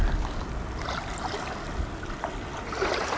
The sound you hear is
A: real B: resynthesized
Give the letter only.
A